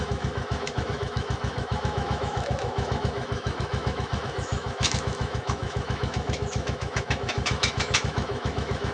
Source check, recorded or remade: remade